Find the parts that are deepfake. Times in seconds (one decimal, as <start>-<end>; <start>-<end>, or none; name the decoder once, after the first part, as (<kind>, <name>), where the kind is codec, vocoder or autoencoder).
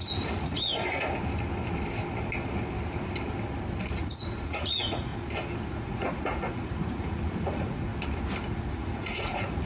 0.0-0.7 (vocoder, Vocos); 4.0-5.1; 5.7-7.9; 8.5-9.7